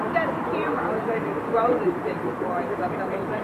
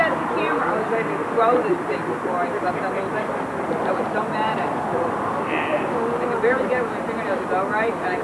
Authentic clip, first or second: second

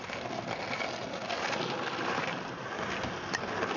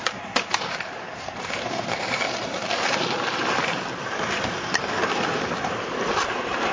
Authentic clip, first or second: first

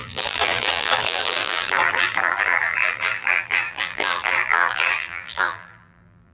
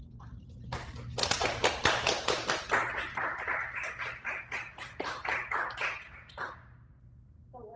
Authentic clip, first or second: second